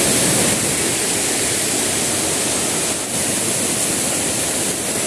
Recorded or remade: recorded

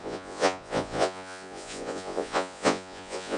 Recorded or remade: remade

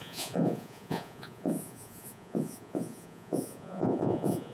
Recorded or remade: remade